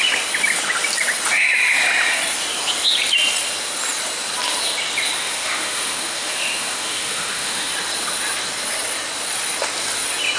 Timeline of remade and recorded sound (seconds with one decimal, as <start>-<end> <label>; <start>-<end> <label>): 0.0-5.2 recorded; 5.2-7.7 remade; 7.7-10.4 recorded